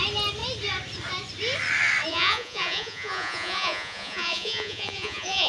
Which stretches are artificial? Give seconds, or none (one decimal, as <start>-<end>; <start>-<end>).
2.1-5.5